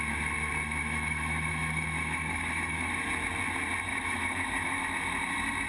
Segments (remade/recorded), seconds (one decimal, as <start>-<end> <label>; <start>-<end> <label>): 0.0-0.8 recorded; 0.8-2.9 remade; 2.9-3.9 recorded; 3.9-4.8 remade; 4.8-5.7 recorded